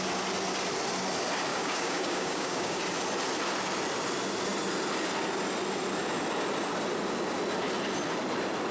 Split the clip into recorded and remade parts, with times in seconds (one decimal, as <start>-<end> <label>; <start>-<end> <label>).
0.0-1.5 recorded; 1.5-2.8 remade; 2.8-8.7 recorded